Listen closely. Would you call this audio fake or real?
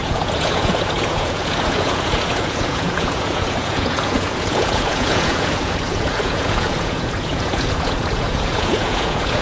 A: fake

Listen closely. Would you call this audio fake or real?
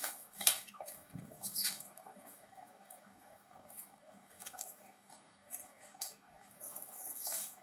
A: fake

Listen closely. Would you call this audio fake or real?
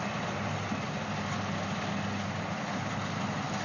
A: real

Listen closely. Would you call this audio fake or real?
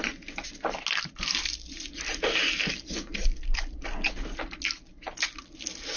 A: real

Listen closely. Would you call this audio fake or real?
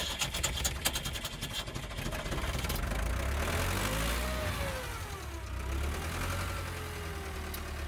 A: real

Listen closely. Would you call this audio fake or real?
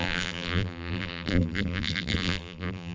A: fake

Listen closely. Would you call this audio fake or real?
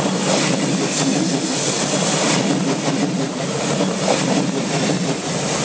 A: real